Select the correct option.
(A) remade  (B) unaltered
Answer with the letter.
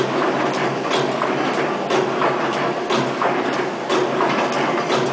B